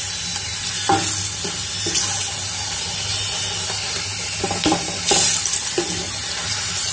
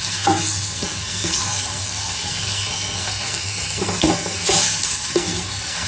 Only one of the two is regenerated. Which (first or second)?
second